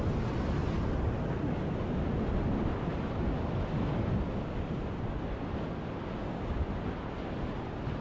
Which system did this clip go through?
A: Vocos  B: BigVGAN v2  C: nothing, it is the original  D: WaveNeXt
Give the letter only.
C